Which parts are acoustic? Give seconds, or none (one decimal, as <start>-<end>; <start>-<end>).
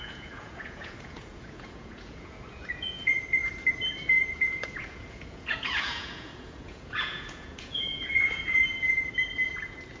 3.4-4.1; 8.6-10.0